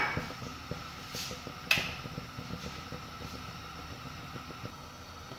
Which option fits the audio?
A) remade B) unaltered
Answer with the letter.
B